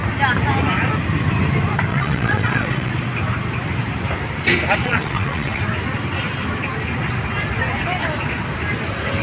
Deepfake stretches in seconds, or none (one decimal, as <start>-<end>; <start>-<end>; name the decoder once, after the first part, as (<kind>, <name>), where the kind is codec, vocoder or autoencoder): 1.9-2.9 (vocoder, WaveNeXt); 4.8-5.6